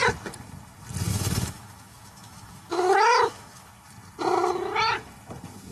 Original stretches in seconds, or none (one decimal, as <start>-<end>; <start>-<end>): 0.0-1.1; 3.7-5.7